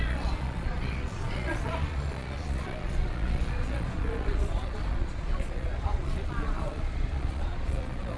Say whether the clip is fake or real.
fake